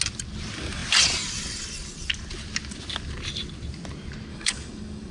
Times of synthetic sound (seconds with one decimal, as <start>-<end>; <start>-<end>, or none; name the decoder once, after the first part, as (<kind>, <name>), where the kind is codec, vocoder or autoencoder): 4.3-5.1 (codec, DAC)